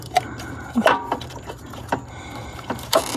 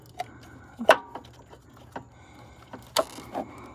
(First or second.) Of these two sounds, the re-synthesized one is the first